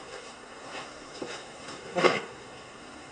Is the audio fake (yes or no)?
yes